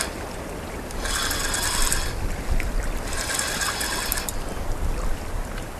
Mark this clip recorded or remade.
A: recorded